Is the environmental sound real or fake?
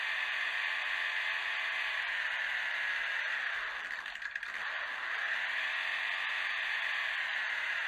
real